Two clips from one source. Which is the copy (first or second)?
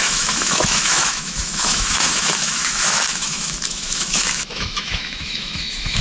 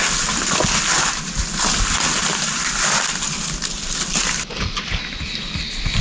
first